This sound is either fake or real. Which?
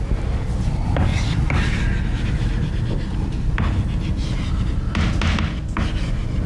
real